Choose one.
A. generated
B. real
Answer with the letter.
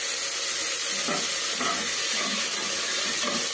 B